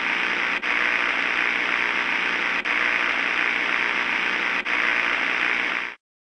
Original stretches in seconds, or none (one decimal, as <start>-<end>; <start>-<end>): 0.0-6.3